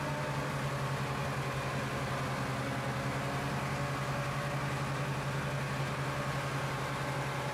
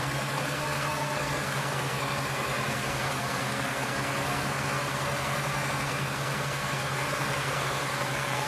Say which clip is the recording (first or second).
first